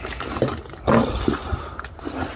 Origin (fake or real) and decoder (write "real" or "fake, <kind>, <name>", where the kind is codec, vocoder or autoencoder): real